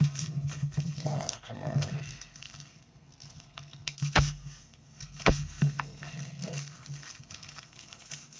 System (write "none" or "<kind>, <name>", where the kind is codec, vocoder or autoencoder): codec, SNAC